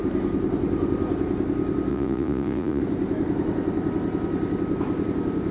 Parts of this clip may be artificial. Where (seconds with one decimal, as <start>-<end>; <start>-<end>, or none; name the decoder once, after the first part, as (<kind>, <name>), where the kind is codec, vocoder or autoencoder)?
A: 1.9-2.8 (vocoder, Vocos)